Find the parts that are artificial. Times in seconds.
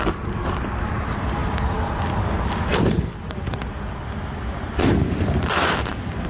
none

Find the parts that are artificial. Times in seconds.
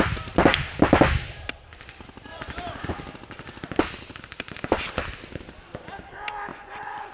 6.5-7.1 (vocoder, Vocos)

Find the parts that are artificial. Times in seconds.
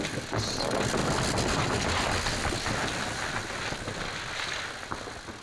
none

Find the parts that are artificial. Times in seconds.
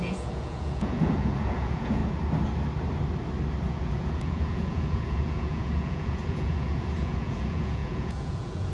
0.0-2.0 (vocoder, Vocos); 3.7-8.7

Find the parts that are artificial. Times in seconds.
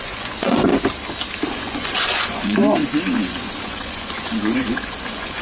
0.0-0.7 (vocoder, Vocos); 1.5-5.4